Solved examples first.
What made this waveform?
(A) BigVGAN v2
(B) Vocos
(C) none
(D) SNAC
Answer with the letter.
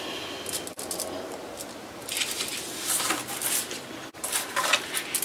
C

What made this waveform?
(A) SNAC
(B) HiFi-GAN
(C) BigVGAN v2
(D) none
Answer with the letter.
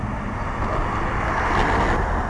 D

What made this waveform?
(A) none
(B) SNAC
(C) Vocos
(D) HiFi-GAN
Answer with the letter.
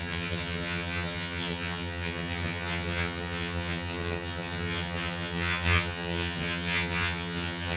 D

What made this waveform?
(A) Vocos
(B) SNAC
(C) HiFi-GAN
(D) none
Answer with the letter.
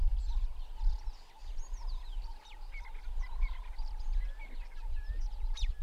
D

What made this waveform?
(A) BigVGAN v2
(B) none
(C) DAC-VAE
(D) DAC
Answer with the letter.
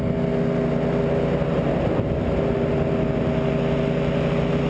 B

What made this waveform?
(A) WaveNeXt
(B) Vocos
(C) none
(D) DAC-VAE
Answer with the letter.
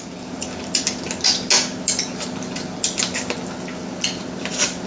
C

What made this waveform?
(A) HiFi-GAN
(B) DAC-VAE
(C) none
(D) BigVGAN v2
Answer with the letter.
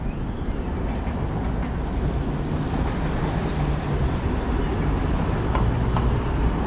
C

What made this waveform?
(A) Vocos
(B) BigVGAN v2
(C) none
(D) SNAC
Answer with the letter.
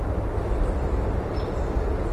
C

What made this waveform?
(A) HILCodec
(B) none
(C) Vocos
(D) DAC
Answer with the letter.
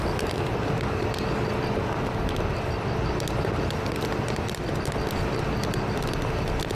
B